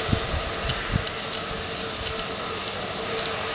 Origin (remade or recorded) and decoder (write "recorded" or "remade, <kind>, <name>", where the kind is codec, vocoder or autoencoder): remade, vocoder, BigVGAN v2